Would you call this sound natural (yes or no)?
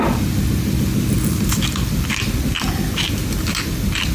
yes